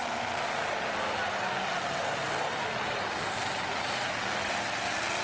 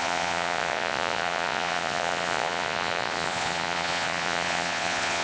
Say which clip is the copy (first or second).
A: second